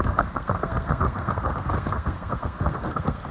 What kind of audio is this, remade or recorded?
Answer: remade